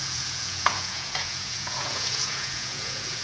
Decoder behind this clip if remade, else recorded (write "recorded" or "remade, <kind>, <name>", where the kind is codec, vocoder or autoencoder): remade, vocoder, Vocos